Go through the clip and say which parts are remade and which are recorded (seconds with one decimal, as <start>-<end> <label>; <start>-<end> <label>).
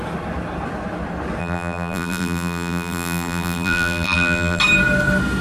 0.0-1.4 recorded; 1.4-4.6 remade; 4.6-5.4 recorded